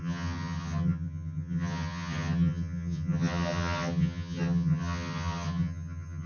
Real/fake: fake